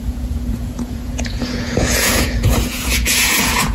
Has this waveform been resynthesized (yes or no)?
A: yes